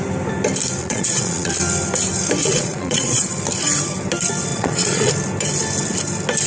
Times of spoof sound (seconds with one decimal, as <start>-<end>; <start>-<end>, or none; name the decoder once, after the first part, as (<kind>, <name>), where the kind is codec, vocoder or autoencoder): 0.8-1.5 (vocoder, Vocos); 2.4-3.3; 4.5-5.1